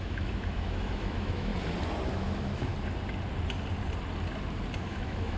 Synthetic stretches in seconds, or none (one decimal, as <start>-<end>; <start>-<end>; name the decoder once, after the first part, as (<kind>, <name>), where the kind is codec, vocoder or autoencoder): 0.0-1.5 (autoencoder, DAC-VAE); 2.1-2.7; 4.8-5.4